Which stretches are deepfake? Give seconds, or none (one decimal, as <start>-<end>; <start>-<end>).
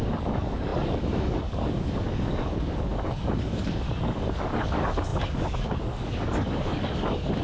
0.0-7.4